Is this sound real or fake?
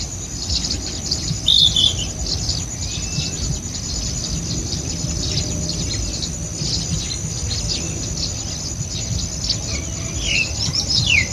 real